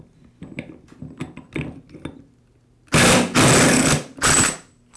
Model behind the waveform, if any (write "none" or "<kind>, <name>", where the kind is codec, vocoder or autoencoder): none